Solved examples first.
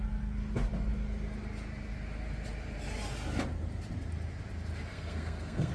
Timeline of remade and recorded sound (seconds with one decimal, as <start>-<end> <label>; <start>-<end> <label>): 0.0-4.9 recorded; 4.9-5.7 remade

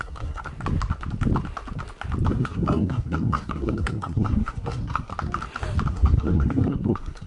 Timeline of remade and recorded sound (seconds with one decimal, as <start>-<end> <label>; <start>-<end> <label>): 0.0-0.5 remade; 0.5-2.3 recorded; 2.3-5.1 remade; 5.1-5.9 recorded; 5.9-7.3 remade

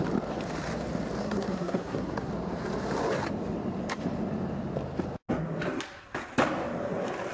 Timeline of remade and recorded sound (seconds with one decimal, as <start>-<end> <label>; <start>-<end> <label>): 0.0-1.2 recorded; 1.2-2.3 remade; 2.3-7.3 recorded

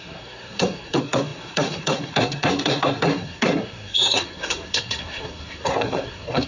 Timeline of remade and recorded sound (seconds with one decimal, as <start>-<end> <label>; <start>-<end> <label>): 0.0-6.5 remade